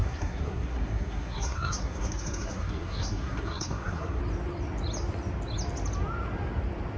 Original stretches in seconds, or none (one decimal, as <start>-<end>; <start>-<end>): 4.2-7.0